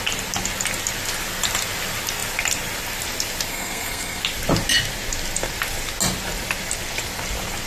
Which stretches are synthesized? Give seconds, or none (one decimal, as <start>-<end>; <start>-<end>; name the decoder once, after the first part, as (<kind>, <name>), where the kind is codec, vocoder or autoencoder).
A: 3.5-4.2 (codec, SNAC)